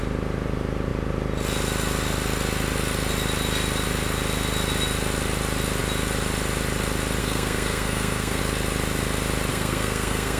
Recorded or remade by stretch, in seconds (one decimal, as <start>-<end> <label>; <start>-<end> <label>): 0.0-7.2 recorded; 7.2-8.4 remade; 8.4-9.5 recorded; 9.5-10.4 remade